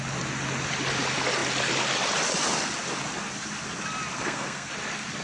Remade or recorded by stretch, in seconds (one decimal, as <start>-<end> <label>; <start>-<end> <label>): 0.0-4.1 recorded; 4.1-4.7 remade; 4.7-5.2 recorded